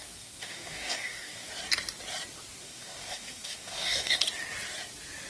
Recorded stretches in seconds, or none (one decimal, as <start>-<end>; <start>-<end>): 1.5-2.6; 4.2-5.3